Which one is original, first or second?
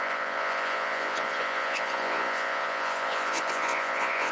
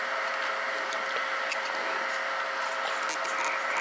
second